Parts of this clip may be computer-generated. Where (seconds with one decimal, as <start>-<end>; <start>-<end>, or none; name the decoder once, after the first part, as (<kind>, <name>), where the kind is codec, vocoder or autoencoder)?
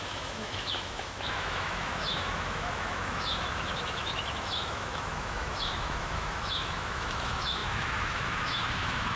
0.0-9.2 (autoencoder, DAC-VAE)